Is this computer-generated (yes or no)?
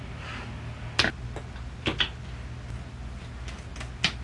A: no